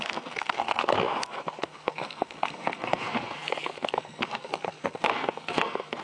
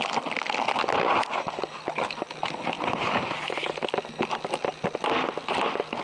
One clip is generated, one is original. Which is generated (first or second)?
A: first